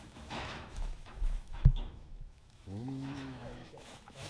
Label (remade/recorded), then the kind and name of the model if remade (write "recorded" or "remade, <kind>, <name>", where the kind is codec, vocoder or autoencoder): remade, autoencoder, DAC-VAE